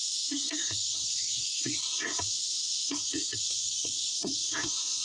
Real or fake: fake